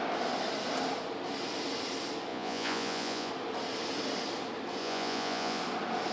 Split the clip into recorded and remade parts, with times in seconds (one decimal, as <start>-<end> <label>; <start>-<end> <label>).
0.0-2.3 recorded; 2.3-3.3 remade; 3.3-4.8 recorded; 4.8-5.6 remade; 5.6-6.1 recorded